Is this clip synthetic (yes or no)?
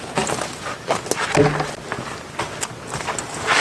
no